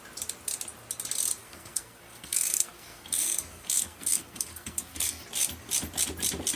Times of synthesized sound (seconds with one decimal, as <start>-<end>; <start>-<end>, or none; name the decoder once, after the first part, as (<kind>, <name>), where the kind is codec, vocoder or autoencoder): 1.4-5.2 (codec, SNAC)